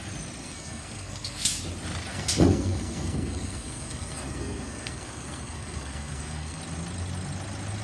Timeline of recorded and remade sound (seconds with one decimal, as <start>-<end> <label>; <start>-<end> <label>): 0.0-0.4 recorded; 0.4-1.6 remade; 1.6-2.1 recorded; 2.1-6.6 remade; 6.6-7.8 recorded